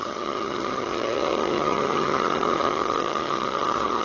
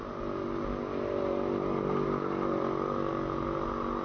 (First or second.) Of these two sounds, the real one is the second